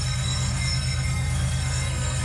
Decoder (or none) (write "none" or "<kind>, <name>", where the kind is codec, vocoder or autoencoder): codec, SNAC